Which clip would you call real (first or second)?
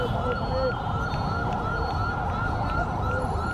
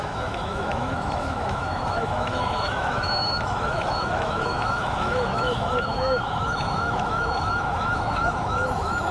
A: first